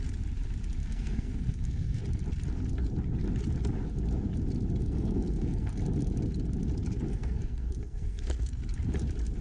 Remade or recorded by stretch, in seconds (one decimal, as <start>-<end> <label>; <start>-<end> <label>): 0.0-0.8 recorded; 0.8-2.0 remade; 2.0-4.8 recorded; 4.8-5.8 remade; 5.8-7.1 recorded; 7.1-8.6 remade; 8.6-9.4 recorded